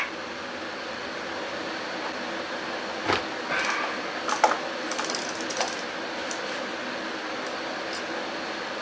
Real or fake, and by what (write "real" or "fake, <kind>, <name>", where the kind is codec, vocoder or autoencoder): real